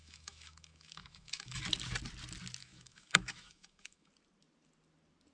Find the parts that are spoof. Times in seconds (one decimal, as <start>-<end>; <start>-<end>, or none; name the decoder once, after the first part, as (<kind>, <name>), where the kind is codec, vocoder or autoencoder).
0.0-1.6 (autoencoder, DAC-VAE); 2.6-4.1